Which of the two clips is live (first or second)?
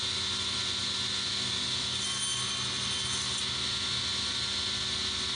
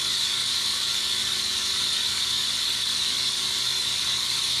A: first